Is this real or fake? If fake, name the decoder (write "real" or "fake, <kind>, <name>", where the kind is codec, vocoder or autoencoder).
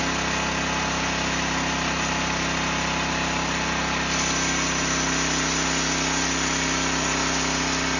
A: real